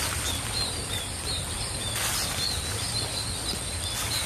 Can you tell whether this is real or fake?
real